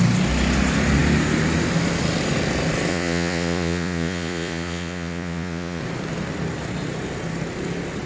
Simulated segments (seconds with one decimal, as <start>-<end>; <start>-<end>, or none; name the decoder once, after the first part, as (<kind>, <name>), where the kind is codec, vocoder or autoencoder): 2.9-5.8 (vocoder, Vocos)